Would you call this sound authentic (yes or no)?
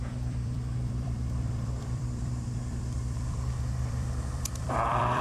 no